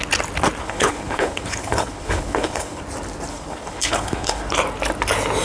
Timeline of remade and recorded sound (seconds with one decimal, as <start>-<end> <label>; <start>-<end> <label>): 0.0-0.6 recorded; 0.6-2.8 remade; 2.8-3.3 recorded; 3.3-4.5 remade; 4.5-5.4 recorded